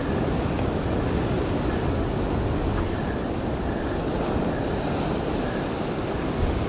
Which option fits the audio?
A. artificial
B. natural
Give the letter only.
B